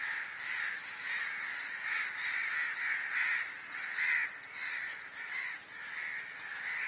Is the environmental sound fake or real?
real